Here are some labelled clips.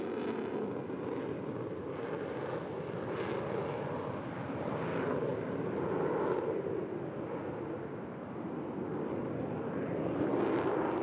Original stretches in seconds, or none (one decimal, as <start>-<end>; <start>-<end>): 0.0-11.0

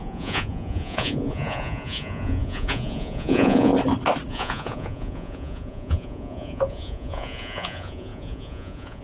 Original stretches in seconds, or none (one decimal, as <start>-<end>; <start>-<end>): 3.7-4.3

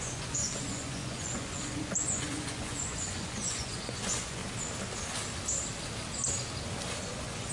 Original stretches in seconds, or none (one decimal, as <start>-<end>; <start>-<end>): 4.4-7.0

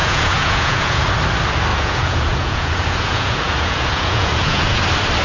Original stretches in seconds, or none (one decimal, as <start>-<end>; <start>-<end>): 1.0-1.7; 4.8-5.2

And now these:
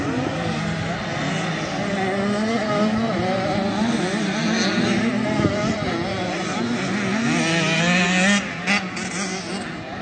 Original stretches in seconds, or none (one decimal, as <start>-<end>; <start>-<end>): 0.0-10.0

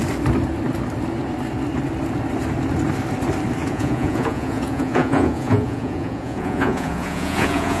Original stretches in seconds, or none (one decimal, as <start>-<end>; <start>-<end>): 0.0-3.6

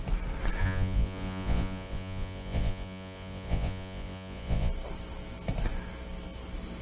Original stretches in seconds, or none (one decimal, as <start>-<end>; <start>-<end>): 0.0-0.6; 4.7-6.8